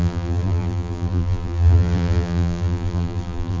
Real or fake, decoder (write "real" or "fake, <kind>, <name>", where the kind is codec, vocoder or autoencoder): fake, vocoder, BigVGAN v2